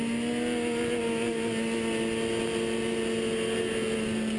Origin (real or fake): real